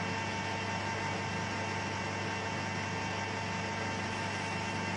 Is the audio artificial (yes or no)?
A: no